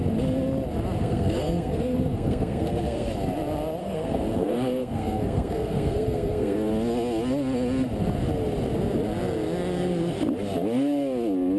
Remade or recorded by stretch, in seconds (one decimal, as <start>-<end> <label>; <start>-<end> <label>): 0.0-1.0 recorded; 1.0-3.1 remade; 3.1-3.8 recorded; 3.8-6.7 remade; 6.7-11.6 recorded